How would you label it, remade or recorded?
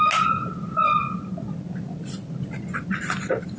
recorded